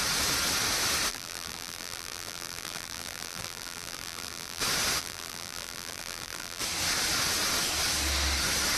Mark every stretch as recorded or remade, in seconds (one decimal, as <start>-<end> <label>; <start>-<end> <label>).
0.0-1.1 recorded; 1.1-4.6 remade; 4.6-5.0 recorded; 5.0-6.6 remade; 6.6-8.8 recorded